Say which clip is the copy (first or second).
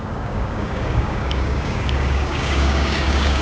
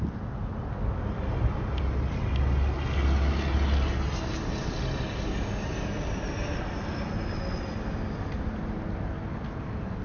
first